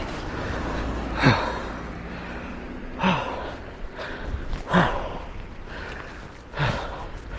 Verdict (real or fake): real